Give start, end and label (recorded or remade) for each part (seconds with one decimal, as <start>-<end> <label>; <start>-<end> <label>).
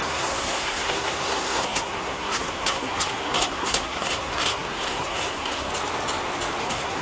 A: 0.0-5.7 remade; 5.7-6.6 recorded; 6.6-7.0 remade